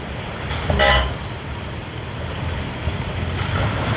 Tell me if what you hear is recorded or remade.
recorded